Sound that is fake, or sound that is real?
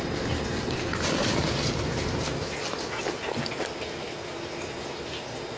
real